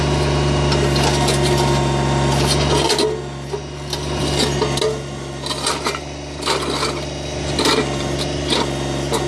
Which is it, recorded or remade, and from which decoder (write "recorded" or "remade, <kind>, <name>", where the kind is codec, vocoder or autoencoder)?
recorded